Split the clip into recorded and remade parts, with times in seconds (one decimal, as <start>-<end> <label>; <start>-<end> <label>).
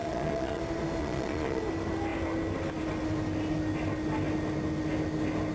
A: 0.0-0.6 remade; 0.6-1.0 recorded; 1.0-1.6 remade; 1.6-5.5 recorded